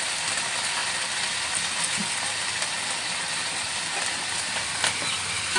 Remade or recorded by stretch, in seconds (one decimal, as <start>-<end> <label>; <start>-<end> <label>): 0.0-5.6 recorded